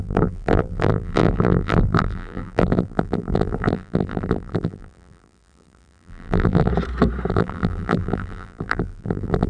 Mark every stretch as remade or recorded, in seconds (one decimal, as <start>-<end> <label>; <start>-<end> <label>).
0.0-6.7 remade; 6.7-7.3 recorded; 7.3-9.5 remade